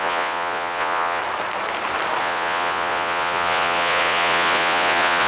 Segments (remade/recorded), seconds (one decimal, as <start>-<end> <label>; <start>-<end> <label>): 0.0-1.2 remade; 1.2-2.2 recorded; 2.2-5.3 remade